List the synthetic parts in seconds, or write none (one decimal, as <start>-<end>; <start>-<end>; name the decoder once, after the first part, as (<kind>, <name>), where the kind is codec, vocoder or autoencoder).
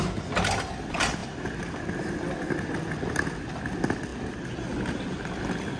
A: none